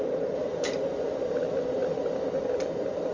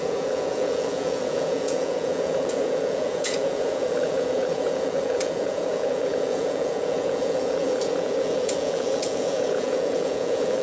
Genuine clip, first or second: first